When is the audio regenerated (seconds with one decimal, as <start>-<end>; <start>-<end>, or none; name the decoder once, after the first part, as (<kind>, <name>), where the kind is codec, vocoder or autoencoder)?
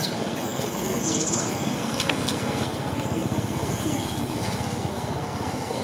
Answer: 0.0-5.8 (codec, SNAC)